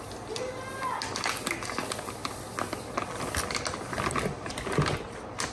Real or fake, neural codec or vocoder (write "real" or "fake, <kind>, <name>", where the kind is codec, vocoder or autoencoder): real